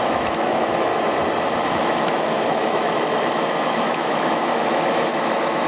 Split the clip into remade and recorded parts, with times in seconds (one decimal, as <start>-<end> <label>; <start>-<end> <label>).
0.0-0.9 remade; 0.9-1.7 recorded; 1.7-5.7 remade